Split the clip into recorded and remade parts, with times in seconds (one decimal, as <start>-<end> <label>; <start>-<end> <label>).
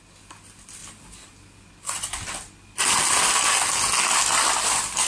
0.0-5.1 recorded